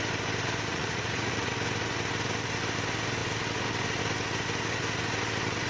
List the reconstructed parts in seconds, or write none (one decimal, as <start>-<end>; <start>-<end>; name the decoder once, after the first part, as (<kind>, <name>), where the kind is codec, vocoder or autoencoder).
0.7-1.5 (vocoder, Vocos)